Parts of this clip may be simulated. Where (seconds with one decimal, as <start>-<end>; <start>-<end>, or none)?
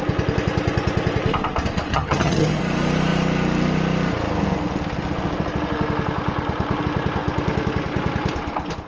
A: 1.9-2.6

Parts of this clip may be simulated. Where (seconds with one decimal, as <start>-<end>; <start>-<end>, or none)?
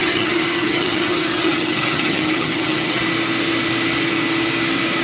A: 0.0-3.0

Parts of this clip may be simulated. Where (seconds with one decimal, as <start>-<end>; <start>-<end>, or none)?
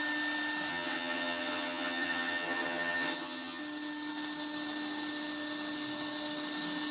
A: 0.7-3.6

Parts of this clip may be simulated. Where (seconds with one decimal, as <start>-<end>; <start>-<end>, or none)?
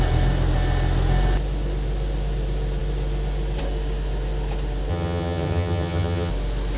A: 4.9-6.3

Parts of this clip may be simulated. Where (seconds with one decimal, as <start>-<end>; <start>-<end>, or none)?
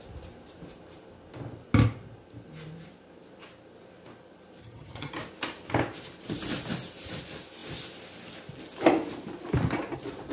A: 4.6-5.1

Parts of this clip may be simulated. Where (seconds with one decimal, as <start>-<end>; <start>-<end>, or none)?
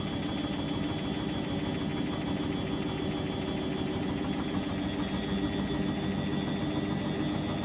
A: none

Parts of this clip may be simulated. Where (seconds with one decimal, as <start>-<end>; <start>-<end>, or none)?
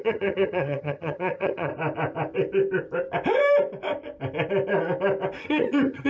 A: 0.0-1.7; 5.4-6.1